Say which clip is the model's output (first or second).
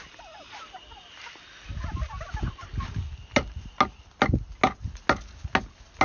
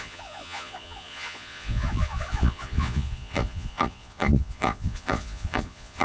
second